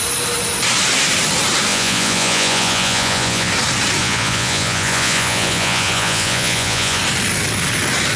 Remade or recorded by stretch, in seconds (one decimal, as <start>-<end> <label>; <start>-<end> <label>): 0.0-1.7 recorded; 1.7-3.5 remade; 3.5-4.0 recorded; 4.0-7.0 remade; 7.0-8.2 recorded